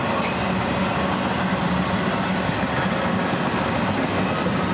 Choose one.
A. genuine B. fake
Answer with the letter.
A